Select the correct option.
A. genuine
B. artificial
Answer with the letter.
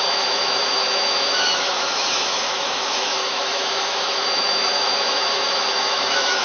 B